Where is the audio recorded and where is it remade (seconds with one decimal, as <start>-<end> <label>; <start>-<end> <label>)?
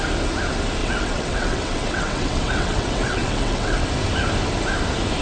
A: 0.0-0.8 recorded; 0.8-3.9 remade; 3.9-5.2 recorded